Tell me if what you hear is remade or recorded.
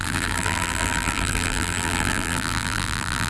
remade